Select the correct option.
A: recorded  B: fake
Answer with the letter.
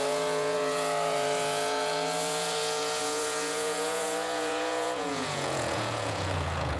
B